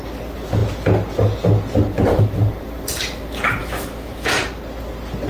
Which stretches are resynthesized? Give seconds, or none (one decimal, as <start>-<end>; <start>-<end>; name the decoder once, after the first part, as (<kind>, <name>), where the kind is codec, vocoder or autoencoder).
3.6-4.3 (autoencoder, DAC-VAE)